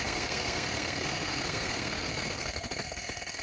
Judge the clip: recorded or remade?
remade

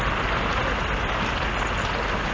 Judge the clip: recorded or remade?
recorded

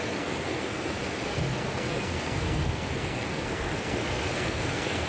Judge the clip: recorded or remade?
remade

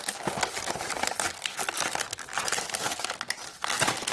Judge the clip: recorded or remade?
recorded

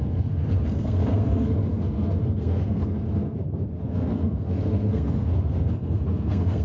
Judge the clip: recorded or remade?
remade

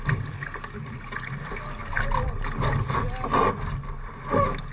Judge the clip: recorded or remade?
recorded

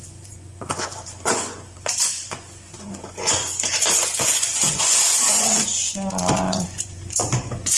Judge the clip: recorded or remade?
remade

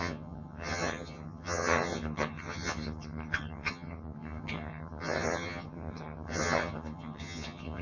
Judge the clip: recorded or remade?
remade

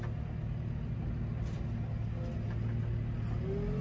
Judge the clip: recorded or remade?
recorded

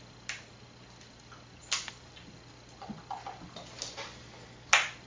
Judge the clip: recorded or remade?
recorded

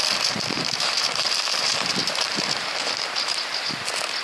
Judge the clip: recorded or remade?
remade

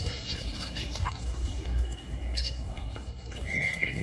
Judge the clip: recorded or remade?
remade